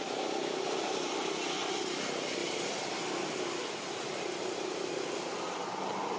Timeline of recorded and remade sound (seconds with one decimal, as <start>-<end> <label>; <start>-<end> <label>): 0.0-6.2 recorded